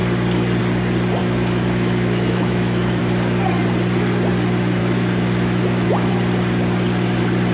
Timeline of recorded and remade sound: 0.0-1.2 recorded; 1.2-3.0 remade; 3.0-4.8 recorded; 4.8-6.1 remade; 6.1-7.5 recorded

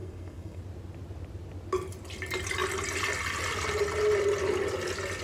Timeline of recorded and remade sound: 0.0-0.6 remade; 0.6-5.2 recorded

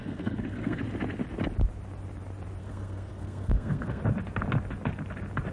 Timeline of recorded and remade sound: 0.0-0.8 remade; 0.8-2.6 recorded; 2.6-4.0 remade; 4.0-5.5 recorded

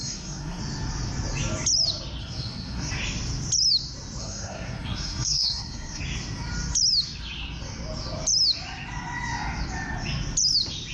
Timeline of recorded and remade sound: 0.0-0.6 remade; 0.6-2.2 recorded; 2.2-2.9 remade; 2.9-4.2 recorded; 4.2-6.0 remade; 6.0-10.9 recorded